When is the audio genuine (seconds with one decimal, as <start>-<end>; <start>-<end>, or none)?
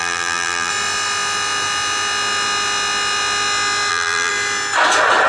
0.7-3.9; 4.3-5.3